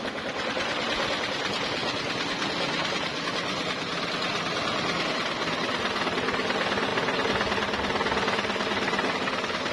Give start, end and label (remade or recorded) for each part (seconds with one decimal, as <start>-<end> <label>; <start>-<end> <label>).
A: 0.0-9.7 recorded